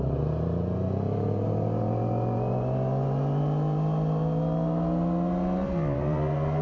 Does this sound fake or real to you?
real